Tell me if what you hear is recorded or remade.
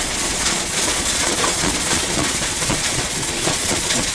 remade